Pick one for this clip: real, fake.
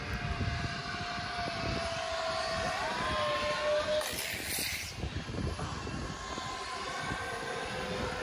real